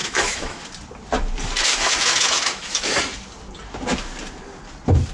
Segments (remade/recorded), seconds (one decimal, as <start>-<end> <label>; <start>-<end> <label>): 0.0-0.6 remade; 0.6-1.7 recorded; 1.7-3.0 remade; 3.0-5.1 recorded